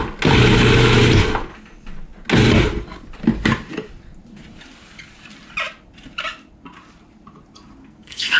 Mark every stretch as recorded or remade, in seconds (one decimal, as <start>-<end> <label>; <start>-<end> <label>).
0.0-7.8 recorded; 7.8-8.4 remade